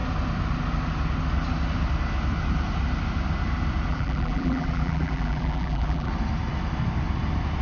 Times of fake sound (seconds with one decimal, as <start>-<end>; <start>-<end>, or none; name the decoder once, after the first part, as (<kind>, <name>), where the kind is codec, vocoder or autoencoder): 3.9-6.1 (vocoder, BigVGAN v2)